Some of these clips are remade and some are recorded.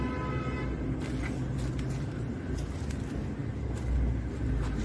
recorded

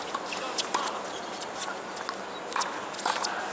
recorded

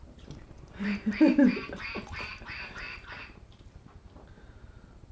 remade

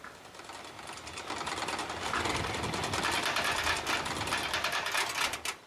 recorded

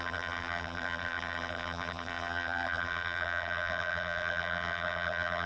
remade